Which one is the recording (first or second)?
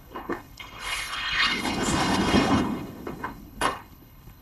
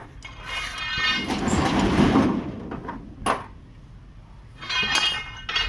second